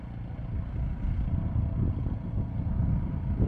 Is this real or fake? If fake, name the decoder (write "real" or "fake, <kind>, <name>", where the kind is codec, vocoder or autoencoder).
real